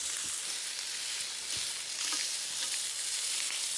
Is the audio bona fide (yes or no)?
yes